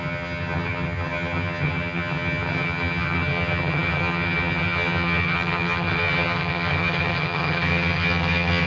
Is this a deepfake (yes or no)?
yes